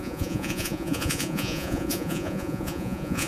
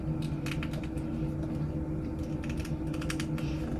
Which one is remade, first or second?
first